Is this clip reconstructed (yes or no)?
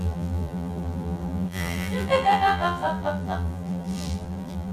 yes